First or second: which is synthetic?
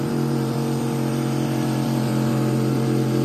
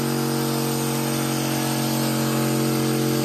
first